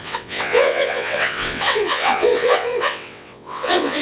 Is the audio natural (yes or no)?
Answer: no